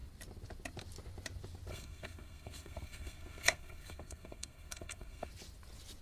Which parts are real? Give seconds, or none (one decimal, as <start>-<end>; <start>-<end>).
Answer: 0.0-1.7; 5.3-6.0